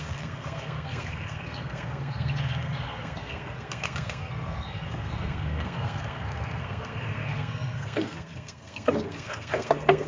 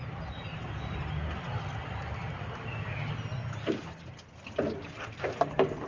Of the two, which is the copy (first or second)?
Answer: first